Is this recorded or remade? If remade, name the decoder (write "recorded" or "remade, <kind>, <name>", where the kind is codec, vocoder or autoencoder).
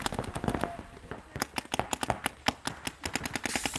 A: recorded